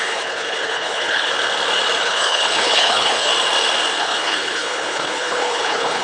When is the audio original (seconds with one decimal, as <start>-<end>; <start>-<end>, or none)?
1.3-2.0; 3.3-4.0